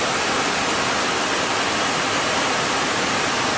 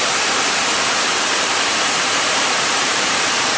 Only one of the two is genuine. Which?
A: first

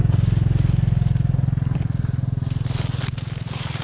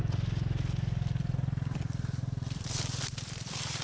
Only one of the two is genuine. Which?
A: first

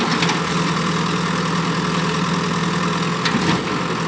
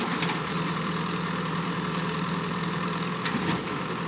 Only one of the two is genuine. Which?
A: first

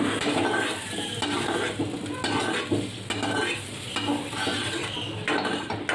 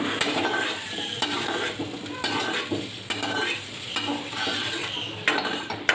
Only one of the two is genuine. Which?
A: first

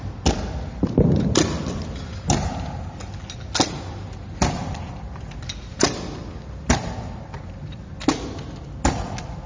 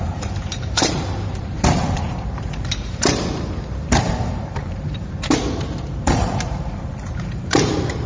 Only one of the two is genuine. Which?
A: first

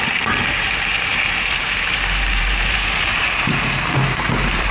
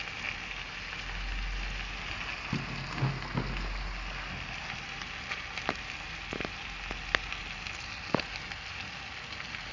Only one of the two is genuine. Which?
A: second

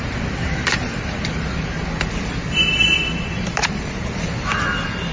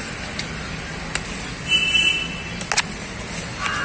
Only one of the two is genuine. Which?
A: second